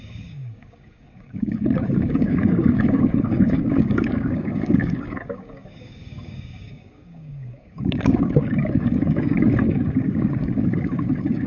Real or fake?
fake